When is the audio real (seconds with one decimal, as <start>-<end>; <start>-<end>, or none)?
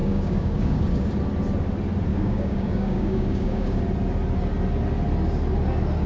1.1-2.1; 3.8-6.1